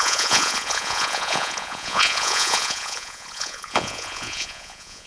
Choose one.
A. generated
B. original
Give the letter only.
A